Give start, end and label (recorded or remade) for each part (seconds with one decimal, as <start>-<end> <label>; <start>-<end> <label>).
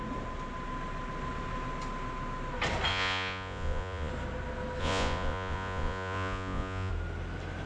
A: 0.0-2.9 recorded; 2.9-4.1 remade; 4.1-4.8 recorded; 4.8-6.9 remade; 6.9-7.7 recorded